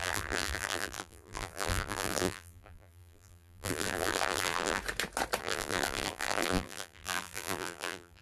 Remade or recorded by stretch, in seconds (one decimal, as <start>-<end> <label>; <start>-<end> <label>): 0.0-4.8 remade; 4.8-5.4 recorded; 5.4-8.2 remade